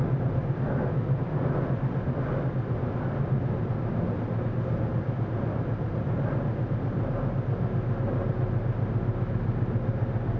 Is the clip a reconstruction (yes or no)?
no